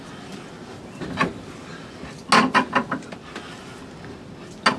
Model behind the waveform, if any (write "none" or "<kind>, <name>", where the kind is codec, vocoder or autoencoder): none